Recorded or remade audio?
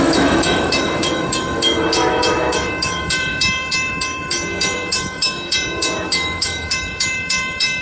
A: remade